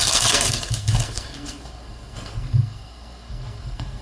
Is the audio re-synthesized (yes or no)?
yes